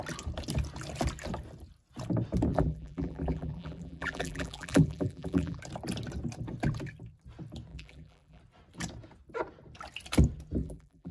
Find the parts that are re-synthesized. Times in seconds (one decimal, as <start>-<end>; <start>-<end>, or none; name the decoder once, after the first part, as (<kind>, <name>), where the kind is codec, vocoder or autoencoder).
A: 2.5-5.6 (vocoder, BigVGAN v2); 7.7-8.4; 10.6-11.1